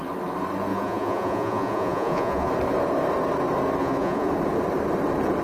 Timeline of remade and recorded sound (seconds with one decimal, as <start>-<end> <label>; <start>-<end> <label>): 0.0-0.7 recorded; 0.7-2.5 remade; 2.5-3.8 recorded; 3.8-4.3 remade; 4.3-5.4 recorded